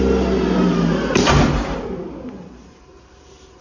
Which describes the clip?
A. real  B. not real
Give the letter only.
A